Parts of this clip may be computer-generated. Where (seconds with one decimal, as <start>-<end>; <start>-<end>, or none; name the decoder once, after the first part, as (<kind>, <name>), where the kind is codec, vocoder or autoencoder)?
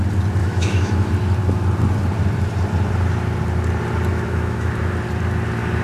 0.4-1.1 (autoencoder, DAC-VAE); 4.1-4.7